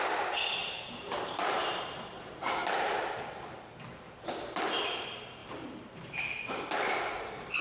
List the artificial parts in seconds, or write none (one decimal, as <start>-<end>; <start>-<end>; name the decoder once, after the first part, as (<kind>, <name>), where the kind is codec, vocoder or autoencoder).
0.6-1.8 (vocoder, BigVGAN v2); 5.4-6.5